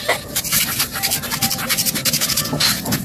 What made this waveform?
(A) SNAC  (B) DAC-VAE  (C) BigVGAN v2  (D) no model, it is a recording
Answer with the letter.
D